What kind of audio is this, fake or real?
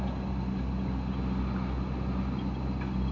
real